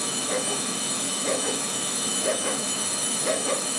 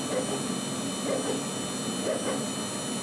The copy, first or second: first